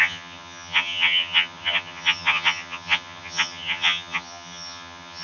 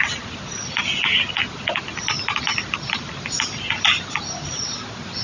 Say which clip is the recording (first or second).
second